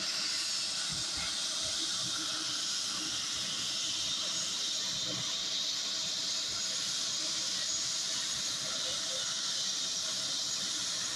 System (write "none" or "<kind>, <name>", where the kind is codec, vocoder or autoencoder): none